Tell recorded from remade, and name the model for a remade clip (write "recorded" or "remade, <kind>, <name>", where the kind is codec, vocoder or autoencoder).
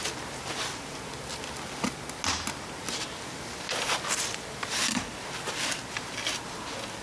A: recorded